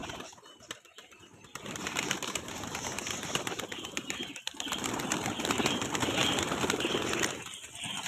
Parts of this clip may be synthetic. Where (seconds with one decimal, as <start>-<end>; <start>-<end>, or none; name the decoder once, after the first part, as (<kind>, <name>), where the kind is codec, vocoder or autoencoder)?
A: 0.0-4.4 (vocoder, BigVGAN v2)